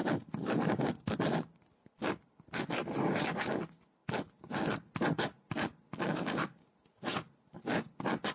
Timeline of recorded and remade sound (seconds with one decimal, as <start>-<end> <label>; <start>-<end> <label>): 0.0-8.3 recorded